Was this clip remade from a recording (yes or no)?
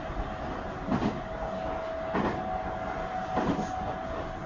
no